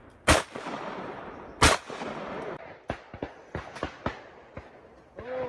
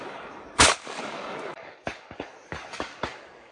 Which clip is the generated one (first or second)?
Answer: second